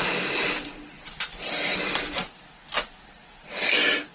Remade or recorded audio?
remade